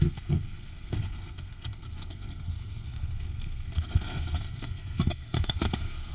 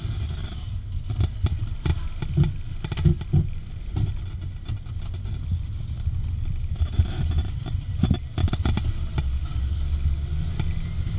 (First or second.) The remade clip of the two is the first